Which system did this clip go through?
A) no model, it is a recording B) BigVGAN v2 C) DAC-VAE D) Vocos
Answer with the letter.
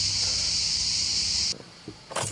A